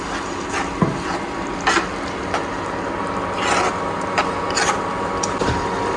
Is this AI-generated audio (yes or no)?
no